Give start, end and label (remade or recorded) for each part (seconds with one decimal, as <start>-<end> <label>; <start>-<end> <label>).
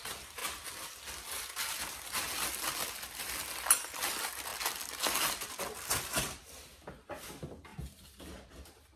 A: 0.0-9.0 recorded